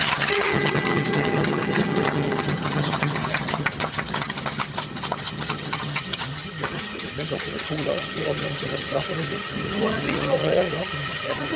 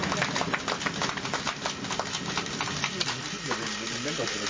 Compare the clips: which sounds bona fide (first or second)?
second